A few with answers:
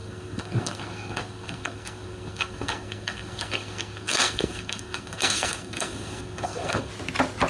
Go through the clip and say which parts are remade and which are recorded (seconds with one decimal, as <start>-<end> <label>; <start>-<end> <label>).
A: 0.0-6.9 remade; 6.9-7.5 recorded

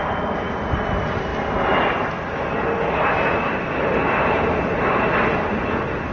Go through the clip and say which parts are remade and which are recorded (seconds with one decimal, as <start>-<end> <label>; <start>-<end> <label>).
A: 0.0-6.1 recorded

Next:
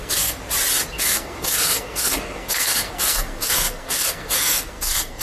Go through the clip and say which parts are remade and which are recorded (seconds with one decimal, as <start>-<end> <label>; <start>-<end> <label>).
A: 0.0-0.4 remade; 0.4-0.9 recorded; 0.9-5.2 remade

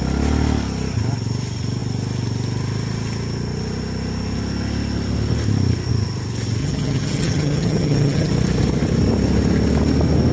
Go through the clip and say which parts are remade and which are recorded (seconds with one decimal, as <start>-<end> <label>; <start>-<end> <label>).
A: 0.0-6.6 recorded; 6.6-8.3 remade; 8.3-10.3 recorded

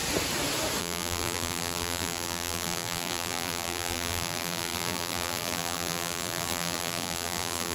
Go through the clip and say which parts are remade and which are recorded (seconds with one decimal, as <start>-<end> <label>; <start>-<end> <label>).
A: 0.0-0.8 recorded; 0.8-7.7 remade